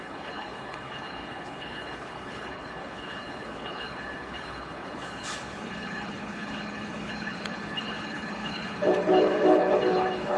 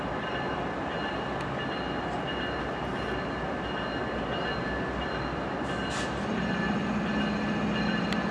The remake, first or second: first